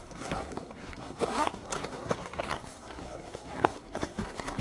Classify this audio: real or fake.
fake